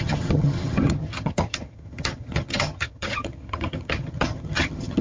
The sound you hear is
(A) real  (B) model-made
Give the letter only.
B